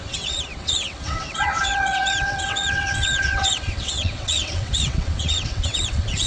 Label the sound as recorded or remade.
remade